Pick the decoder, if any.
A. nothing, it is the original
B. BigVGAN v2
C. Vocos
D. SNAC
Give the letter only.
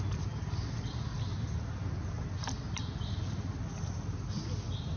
A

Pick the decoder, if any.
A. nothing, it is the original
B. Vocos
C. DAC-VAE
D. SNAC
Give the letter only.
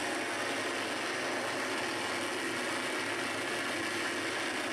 A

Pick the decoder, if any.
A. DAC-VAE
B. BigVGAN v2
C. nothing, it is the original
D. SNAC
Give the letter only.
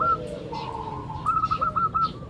C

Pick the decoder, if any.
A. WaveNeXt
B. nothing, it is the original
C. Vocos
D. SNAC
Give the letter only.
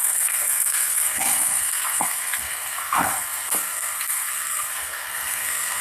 D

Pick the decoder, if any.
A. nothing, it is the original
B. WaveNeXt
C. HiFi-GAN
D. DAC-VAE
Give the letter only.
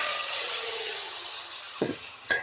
C